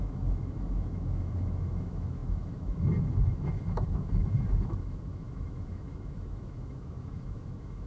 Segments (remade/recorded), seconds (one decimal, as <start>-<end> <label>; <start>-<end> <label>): 0.0-7.9 remade